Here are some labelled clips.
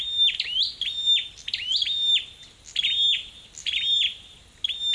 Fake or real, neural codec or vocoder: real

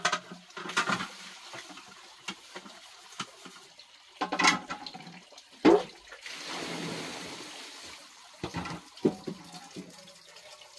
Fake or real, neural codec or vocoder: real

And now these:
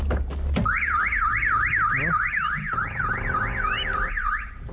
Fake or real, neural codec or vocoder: real